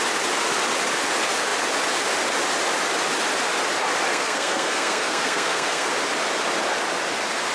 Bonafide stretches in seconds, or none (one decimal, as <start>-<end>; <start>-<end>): 0.0-4.1; 5.9-7.5